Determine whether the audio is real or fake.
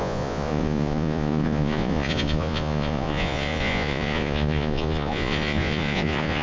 fake